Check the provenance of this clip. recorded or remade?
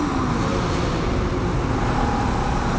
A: recorded